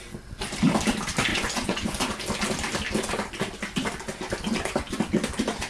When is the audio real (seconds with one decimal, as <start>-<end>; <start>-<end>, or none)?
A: 0.0-1.3; 2.1-5.7